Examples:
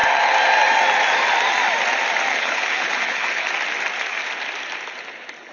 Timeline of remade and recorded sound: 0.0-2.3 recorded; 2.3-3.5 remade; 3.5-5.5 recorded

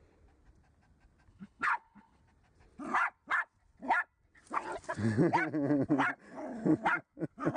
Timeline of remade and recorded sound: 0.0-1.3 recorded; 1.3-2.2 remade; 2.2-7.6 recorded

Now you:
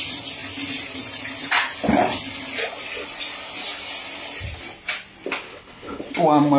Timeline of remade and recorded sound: 0.0-5.5 recorded; 5.5-6.0 remade; 6.0-6.6 recorded

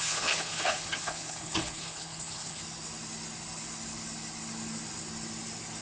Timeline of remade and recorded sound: 0.0-2.6 remade; 2.6-5.8 recorded

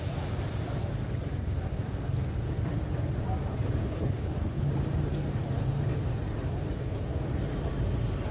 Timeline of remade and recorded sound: 0.0-3.8 recorded; 3.8-4.7 remade; 4.7-8.3 recorded

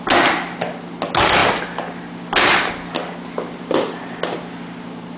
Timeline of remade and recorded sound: 0.0-5.2 recorded